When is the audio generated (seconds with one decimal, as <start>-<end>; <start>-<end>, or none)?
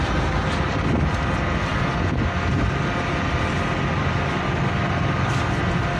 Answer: none